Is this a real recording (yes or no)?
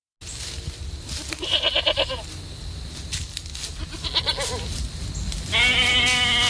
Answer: yes